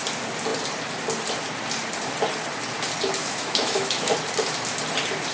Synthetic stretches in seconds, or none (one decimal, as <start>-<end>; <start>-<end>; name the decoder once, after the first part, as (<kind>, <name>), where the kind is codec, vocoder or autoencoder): 3.2-4.1 (autoencoder, DAC-VAE)